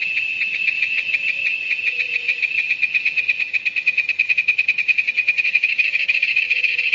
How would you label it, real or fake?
fake